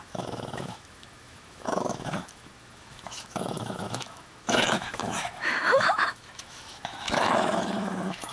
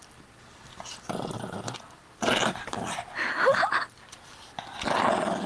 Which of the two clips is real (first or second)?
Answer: second